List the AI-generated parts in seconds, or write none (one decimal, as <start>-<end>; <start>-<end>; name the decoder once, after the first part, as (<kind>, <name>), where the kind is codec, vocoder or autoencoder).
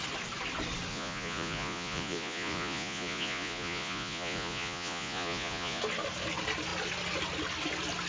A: 0.9-5.8 (vocoder, Vocos)